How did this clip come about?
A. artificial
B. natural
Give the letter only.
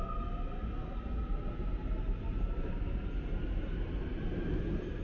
B